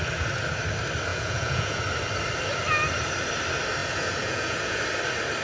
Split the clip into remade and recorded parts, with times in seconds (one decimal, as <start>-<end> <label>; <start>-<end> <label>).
0.0-1.1 recorded; 1.1-1.8 remade; 1.8-3.8 recorded; 3.8-4.8 remade; 4.8-5.4 recorded